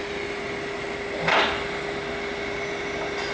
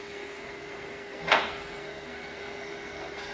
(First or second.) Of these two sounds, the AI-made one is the second